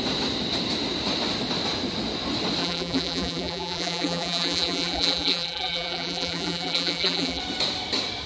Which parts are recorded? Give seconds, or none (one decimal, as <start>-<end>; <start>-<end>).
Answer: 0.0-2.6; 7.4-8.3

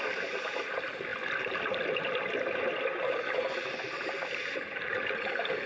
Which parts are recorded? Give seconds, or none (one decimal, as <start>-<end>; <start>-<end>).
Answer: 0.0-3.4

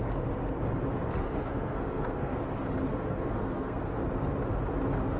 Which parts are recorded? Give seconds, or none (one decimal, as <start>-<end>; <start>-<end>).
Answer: 0.0-1.2; 2.4-2.9; 4.1-5.2

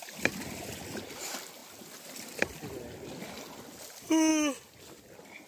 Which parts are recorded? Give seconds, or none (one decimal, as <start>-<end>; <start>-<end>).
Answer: 0.0-5.5